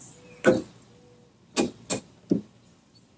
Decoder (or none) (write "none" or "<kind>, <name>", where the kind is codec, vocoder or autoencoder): none